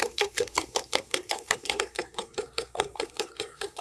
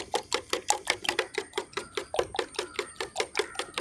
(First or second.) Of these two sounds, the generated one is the first